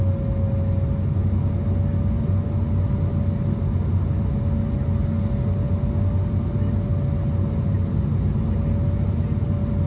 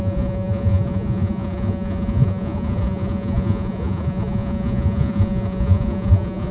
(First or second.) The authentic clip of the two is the first